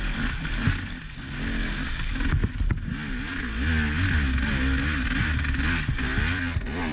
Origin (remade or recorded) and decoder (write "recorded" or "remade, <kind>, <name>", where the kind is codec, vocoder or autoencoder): recorded